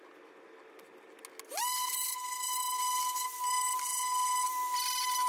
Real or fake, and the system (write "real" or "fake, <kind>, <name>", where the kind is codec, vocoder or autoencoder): real